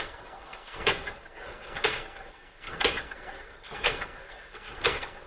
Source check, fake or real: fake